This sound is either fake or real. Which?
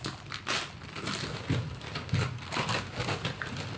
real